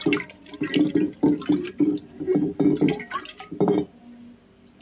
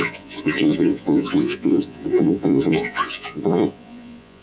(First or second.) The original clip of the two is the first